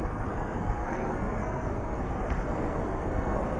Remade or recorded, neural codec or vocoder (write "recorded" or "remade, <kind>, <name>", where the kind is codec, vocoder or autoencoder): remade, codec, SNAC